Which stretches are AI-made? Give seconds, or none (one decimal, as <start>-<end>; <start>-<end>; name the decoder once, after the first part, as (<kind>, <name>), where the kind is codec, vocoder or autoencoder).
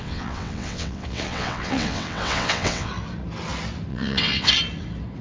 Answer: 0.0-2.9 (vocoder, WaveNeXt); 3.9-4.5